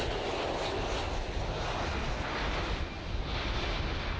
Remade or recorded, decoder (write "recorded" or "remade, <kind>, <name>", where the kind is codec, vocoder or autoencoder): recorded